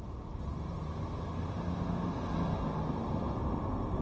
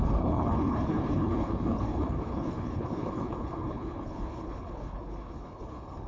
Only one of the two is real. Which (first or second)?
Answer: first